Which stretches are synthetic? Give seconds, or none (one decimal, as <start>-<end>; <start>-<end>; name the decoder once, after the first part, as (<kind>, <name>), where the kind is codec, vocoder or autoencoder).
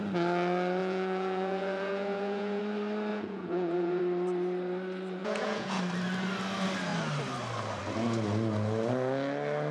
0.8-2.6 (vocoder, Vocos); 3.1-4.0; 5.2-5.8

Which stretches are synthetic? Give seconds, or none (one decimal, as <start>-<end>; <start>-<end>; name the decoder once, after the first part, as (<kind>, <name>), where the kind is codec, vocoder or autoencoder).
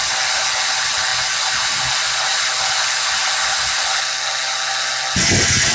none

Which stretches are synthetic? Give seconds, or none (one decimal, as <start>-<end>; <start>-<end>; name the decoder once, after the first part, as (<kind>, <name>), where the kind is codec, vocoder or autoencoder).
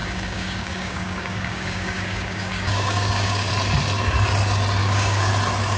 0.0-3.5 (codec, DAC); 4.8-5.3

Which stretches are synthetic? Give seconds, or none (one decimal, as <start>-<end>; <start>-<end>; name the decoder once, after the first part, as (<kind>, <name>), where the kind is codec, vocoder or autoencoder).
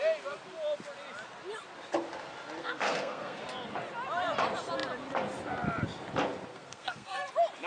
2.6-3.4 (codec, SNAC); 6.5-7.3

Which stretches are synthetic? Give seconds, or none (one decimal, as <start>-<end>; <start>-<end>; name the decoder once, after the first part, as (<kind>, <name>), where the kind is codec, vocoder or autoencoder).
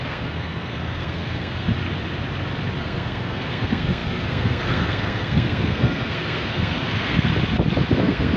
0.0-1.7 (codec, SNAC); 2.8-7.3; 8.0-8.4